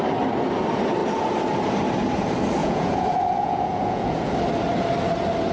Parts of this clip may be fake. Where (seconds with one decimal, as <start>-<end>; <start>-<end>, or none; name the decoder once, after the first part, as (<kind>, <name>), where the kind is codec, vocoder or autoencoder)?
2.6-4.3 (vocoder, Vocos)